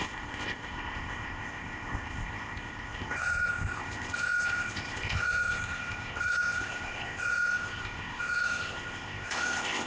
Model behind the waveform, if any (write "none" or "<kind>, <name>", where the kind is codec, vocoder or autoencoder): codec, ZipCodec